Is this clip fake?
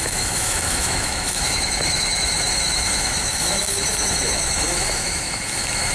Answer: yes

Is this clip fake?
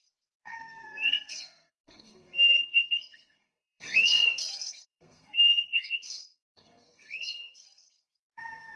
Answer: yes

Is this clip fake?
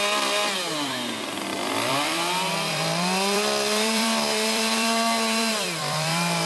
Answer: yes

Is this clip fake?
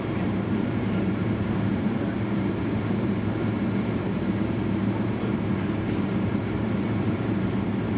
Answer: yes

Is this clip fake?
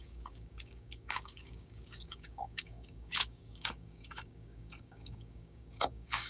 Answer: yes